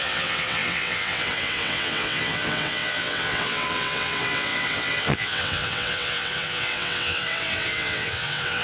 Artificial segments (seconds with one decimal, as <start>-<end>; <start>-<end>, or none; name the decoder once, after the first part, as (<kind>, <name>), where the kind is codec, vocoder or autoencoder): 0.0-8.6 (vocoder, WaveNeXt)